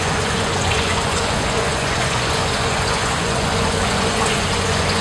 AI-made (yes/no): yes